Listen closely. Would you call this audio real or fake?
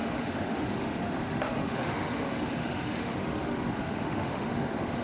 fake